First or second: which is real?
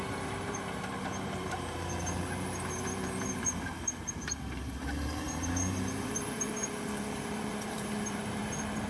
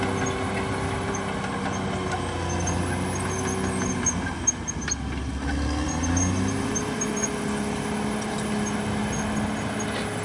second